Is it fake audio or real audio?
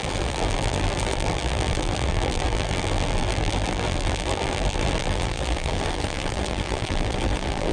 fake